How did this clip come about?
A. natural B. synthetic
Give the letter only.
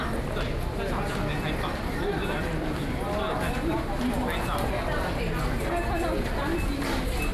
A